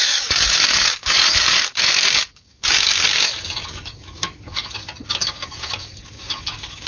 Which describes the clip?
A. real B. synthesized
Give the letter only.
B